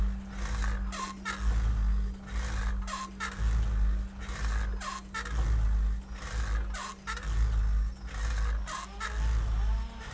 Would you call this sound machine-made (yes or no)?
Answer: no